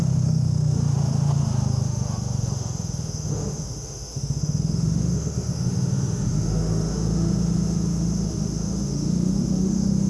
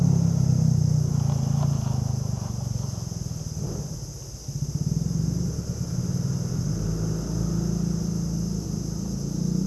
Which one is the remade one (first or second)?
first